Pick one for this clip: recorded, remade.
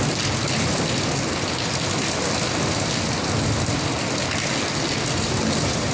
recorded